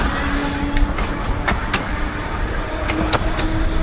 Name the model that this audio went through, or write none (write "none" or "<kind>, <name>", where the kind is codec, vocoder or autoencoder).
none